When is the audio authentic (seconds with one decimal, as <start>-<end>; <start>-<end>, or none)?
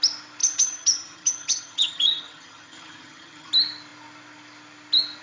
0.0-0.4; 3.5-5.2